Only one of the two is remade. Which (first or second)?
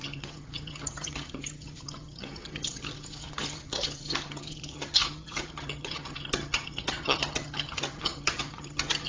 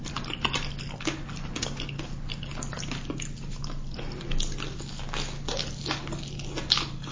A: first